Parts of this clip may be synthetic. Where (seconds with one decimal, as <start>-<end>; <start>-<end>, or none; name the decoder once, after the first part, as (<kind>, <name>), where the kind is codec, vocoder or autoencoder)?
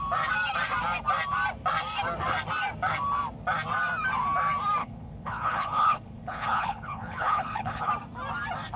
4.8-7.9 (codec, HILCodec)